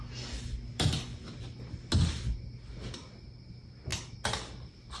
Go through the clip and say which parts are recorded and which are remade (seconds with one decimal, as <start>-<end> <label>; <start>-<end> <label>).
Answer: 0.0-5.0 recorded